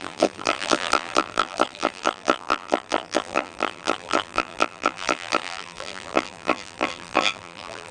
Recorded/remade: remade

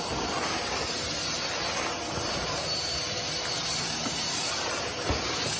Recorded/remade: recorded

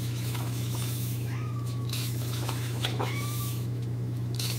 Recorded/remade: remade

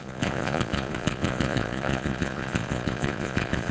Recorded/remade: remade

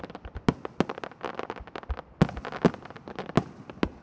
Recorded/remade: recorded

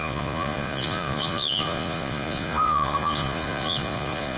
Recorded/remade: remade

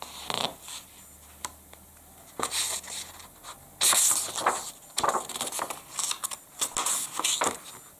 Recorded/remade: recorded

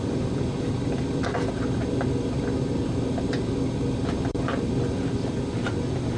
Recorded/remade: remade